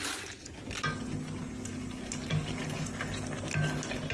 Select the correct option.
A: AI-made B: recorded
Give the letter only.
B